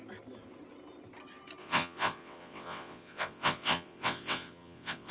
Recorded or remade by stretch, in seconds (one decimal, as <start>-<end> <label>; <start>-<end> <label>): 0.0-1.6 recorded; 1.6-5.1 remade